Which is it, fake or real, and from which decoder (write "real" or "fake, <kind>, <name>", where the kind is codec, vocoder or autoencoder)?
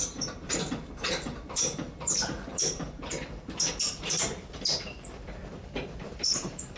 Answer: fake, vocoder, BigVGAN v2